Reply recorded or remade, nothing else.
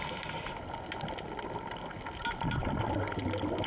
recorded